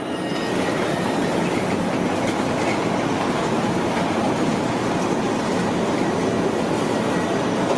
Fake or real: real